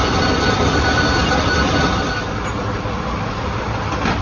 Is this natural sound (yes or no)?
yes